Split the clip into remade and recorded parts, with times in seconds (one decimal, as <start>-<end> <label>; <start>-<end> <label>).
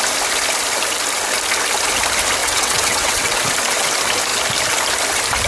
0.0-2.4 recorded; 2.4-3.4 remade; 3.4-5.5 recorded